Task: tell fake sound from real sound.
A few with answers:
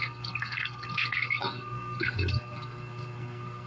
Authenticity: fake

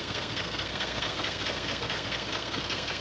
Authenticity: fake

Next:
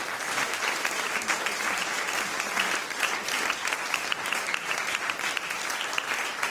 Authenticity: real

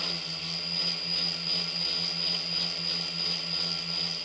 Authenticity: real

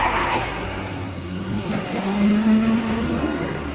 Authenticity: fake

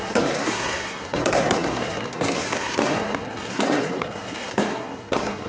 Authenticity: fake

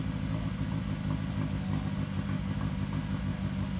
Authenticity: real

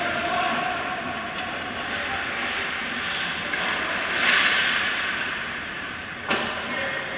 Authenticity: real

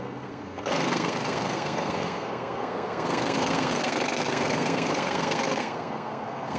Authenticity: fake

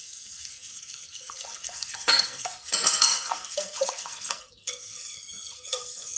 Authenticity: fake